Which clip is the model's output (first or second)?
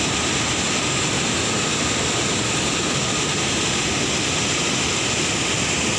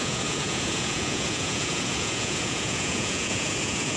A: second